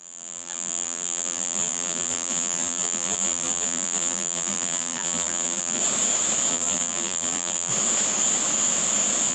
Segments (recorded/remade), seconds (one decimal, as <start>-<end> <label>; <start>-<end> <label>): 0.0-5.8 remade; 5.8-6.5 recorded; 6.5-7.7 remade; 7.7-9.3 recorded